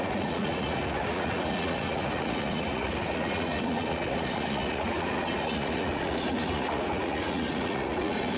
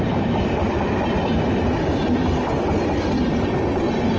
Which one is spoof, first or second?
first